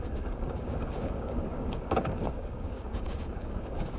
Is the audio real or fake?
fake